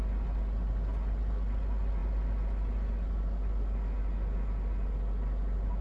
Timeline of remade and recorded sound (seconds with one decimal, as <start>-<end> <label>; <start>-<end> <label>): 0.0-5.8 recorded